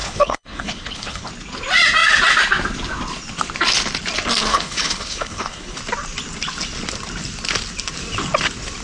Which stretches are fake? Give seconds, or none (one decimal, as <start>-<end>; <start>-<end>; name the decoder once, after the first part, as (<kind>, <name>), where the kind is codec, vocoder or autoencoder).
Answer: 0.0-1.3 (codec, HILCodec); 4.5-5.8